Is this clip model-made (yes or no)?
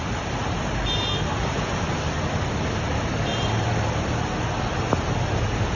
no